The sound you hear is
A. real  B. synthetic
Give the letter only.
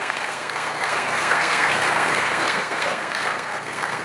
B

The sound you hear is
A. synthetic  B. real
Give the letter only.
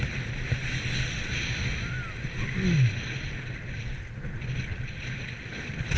B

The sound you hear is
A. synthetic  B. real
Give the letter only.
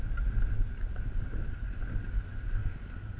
B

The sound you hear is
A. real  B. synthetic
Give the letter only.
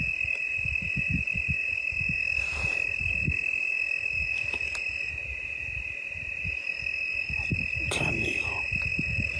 A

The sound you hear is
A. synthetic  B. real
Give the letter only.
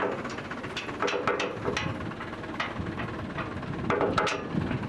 B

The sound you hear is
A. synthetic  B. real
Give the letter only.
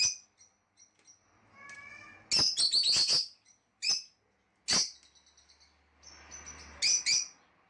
B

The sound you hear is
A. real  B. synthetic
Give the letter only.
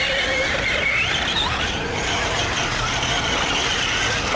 A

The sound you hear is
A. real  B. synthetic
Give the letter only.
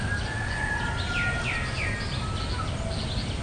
A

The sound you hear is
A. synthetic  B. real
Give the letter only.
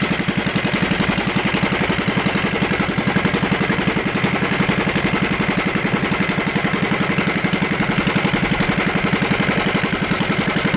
B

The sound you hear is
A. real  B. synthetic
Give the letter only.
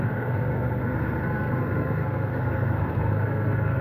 B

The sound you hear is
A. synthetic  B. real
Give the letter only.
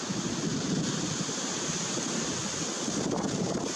B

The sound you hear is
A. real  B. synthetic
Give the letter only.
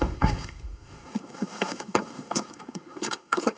B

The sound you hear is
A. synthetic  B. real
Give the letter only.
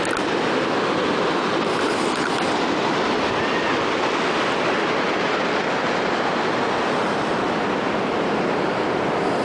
B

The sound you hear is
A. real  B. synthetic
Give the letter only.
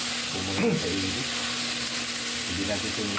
A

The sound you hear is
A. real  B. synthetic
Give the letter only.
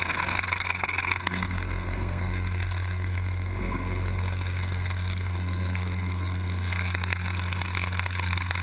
B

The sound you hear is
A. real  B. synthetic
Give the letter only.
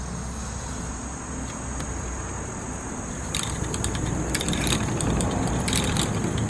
A